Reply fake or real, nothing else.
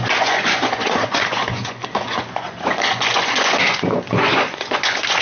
fake